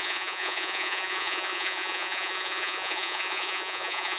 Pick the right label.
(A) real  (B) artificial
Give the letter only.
B